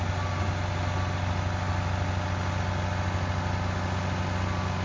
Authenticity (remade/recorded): recorded